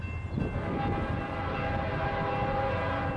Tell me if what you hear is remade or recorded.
recorded